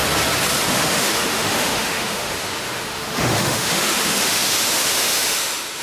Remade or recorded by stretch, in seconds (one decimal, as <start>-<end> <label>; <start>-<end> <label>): 0.0-0.7 recorded; 0.7-5.8 remade